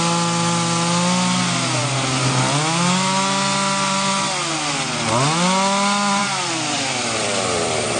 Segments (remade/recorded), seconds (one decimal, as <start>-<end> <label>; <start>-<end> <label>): 0.0-6.2 recorded; 6.2-8.0 remade